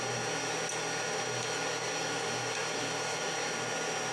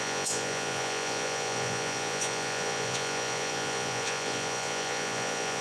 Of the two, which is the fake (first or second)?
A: second